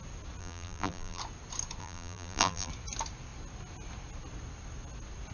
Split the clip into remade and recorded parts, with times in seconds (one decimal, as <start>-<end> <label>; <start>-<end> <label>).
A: 0.0-0.4 recorded; 0.4-1.2 remade; 1.2-1.8 recorded; 1.8-2.7 remade; 2.7-5.3 recorded